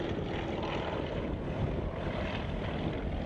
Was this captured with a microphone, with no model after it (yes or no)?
yes